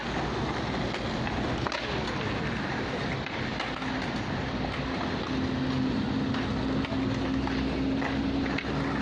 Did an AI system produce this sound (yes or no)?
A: no